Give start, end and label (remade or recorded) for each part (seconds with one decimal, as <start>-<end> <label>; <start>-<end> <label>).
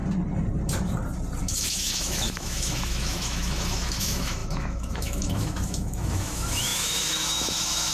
0.0-1.4 recorded; 1.4-7.9 remade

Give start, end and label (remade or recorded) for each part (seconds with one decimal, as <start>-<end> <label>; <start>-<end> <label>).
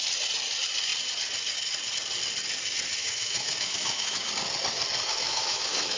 0.0-3.0 recorded; 3.0-4.3 remade; 4.3-5.1 recorded; 5.1-6.0 remade